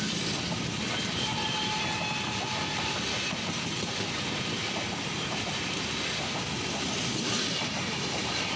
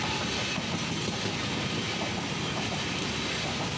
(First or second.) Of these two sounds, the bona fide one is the second